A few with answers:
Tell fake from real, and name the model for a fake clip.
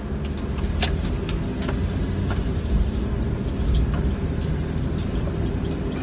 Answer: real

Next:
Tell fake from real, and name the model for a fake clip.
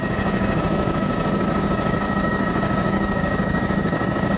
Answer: fake, codec, DAC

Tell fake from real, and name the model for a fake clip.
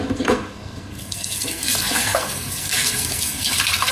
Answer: fake, codec, SNAC